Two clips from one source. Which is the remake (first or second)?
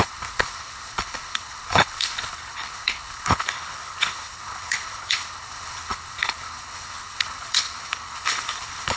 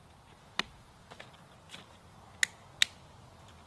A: first